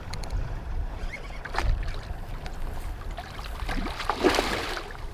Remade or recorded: recorded